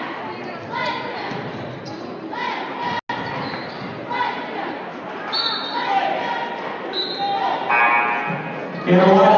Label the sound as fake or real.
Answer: real